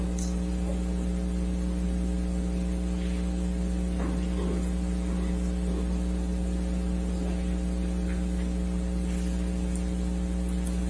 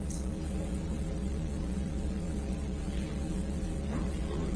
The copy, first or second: second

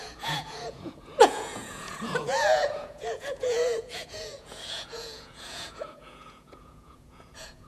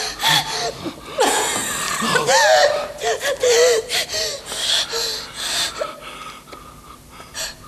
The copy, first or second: first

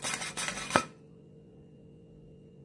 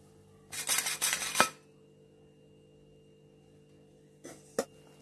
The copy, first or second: first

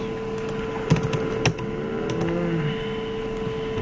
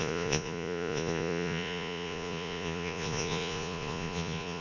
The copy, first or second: second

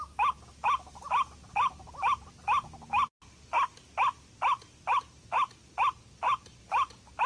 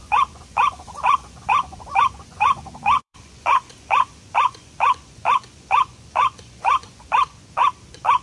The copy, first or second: second